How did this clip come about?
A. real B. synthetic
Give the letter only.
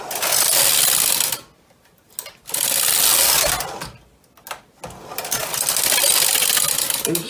A